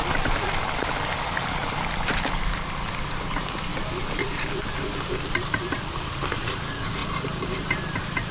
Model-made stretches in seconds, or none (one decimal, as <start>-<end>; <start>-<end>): 7.0-8.3